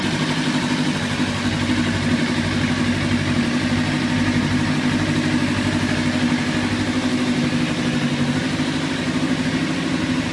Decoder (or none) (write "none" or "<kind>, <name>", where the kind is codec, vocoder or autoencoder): none